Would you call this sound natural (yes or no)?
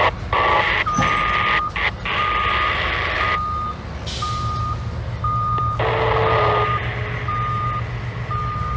yes